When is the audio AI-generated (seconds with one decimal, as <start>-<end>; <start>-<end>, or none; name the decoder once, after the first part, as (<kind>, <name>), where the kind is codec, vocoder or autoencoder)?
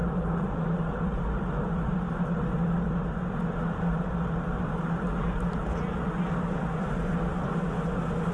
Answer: 0.0-1.9 (vocoder, BigVGAN v2)